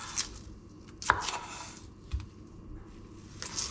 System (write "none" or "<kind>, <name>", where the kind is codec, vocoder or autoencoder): none